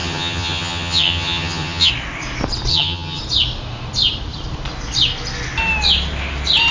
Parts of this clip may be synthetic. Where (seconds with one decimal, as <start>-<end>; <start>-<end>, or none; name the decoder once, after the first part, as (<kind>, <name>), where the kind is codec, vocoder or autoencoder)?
0.0-1.9 (vocoder, HiFi-GAN); 2.7-3.2